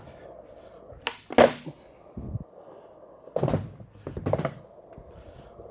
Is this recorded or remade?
recorded